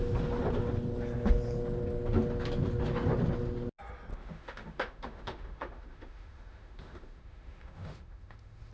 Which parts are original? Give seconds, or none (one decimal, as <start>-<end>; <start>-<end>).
0.0-4.1